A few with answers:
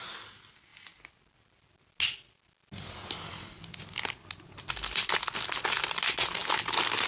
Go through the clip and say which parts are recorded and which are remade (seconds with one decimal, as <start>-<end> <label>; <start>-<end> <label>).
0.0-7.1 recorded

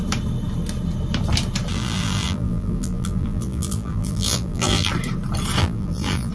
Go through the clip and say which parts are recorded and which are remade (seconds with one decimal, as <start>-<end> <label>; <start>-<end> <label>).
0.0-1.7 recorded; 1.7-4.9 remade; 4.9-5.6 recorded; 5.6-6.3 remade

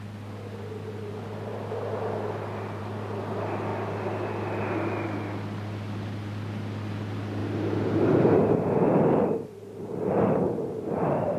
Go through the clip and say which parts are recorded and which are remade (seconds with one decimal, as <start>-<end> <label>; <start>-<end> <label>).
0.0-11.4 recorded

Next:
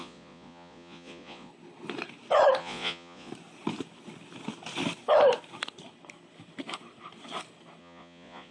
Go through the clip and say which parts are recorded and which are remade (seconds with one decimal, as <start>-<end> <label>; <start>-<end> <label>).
0.0-1.5 remade; 1.5-2.6 recorded; 2.6-3.3 remade; 3.3-7.8 recorded; 7.8-8.5 remade